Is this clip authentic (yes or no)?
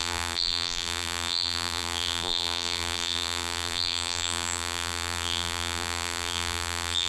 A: no